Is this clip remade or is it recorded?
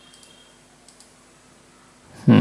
recorded